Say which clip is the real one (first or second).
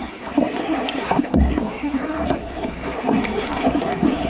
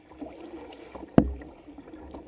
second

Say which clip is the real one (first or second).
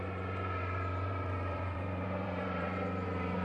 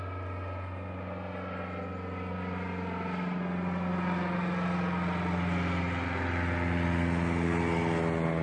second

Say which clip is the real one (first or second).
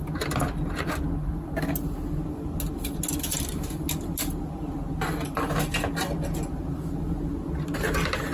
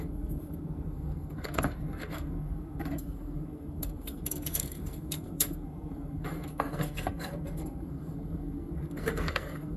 first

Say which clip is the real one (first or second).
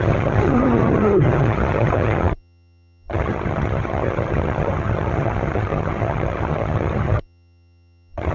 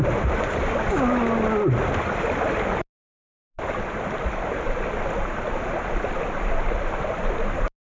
second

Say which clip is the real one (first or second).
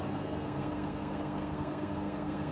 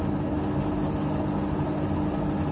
second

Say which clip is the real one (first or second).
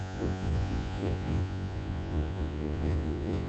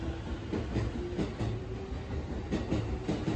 second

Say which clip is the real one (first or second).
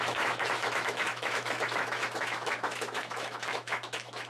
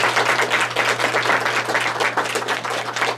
second